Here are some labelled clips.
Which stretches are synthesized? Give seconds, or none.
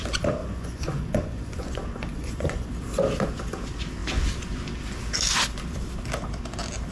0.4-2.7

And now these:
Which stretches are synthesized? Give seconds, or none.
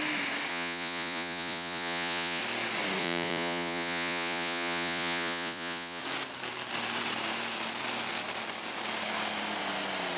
0.5-2.4; 3.0-6.0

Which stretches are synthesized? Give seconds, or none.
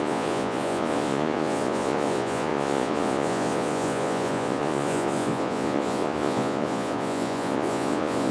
0.0-8.3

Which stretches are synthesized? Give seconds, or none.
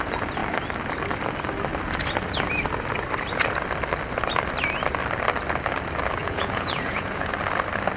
6.2-7.3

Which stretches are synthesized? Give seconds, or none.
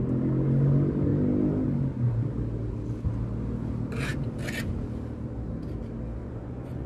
6.2-6.9